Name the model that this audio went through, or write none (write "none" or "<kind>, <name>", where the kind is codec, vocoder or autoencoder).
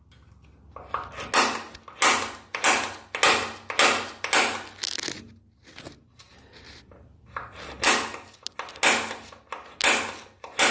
none